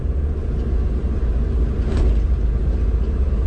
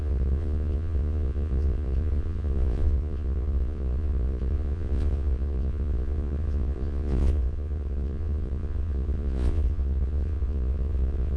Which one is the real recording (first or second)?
first